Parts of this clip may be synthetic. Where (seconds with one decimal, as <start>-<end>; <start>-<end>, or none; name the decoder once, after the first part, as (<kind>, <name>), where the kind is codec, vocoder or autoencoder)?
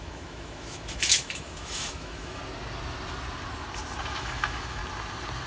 0.0-2.4 (autoencoder, DAC-VAE); 4.0-4.8